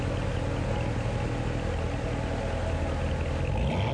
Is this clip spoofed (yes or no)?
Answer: no